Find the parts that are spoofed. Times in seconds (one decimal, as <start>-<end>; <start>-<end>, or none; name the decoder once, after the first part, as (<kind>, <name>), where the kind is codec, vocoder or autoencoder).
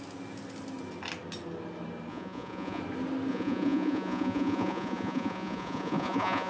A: 2.1-2.8 (vocoder, Vocos); 3.3-6.5